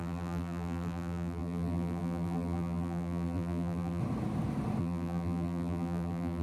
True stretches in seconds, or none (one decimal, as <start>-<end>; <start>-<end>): 4.0-4.8

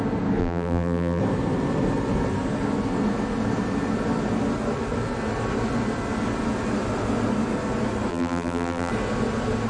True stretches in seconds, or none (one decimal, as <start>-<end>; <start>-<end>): 0.0-0.4; 1.2-8.1; 8.9-9.7

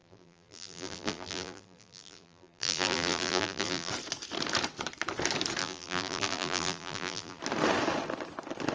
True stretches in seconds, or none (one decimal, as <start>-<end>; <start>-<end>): 3.9-5.6; 7.4-8.7

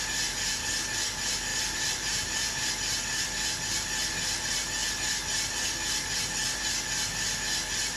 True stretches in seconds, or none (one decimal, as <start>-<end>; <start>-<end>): 0.0-1.5; 2.7-8.0

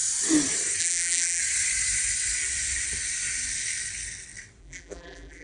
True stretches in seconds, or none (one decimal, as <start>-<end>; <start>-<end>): 0.0-0.8; 1.4-4.6

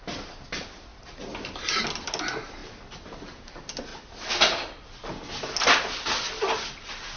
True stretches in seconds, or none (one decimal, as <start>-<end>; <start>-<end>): 0.0-7.2